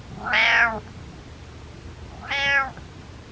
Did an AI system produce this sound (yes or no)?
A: no